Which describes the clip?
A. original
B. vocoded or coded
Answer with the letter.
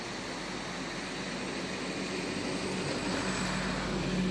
A